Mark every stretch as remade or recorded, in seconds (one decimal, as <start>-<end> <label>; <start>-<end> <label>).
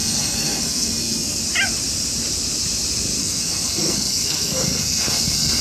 0.0-1.4 remade; 1.4-3.2 recorded; 3.2-5.6 remade